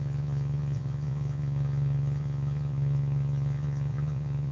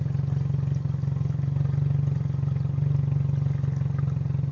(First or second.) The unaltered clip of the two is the second